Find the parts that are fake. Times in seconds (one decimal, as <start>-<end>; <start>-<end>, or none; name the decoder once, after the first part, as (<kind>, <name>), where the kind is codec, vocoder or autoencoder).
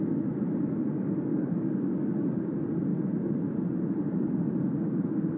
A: 1.3-2.5 (codec, DAC)